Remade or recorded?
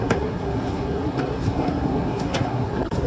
remade